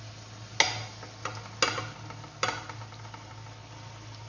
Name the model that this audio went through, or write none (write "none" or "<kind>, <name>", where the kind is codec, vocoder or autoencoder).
none